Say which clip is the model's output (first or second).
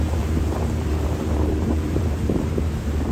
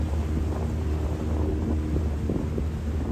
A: first